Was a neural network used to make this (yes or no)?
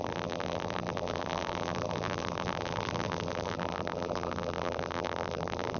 yes